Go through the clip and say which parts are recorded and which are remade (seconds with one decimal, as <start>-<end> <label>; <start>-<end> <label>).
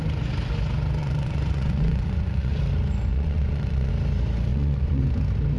0.0-1.0 recorded; 1.0-2.6 remade; 2.6-3.1 recorded; 3.1-3.9 remade; 3.9-4.5 recorded; 4.5-5.0 remade; 5.0-5.6 recorded